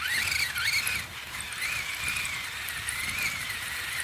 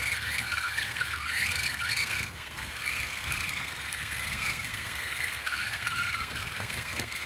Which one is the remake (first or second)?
second